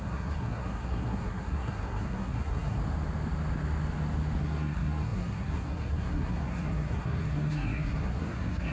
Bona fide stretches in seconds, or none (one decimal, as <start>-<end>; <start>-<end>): 2.8-4.4